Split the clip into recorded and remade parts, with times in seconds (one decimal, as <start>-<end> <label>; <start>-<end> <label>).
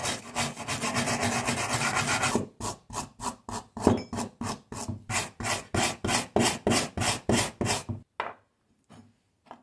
0.0-9.6 recorded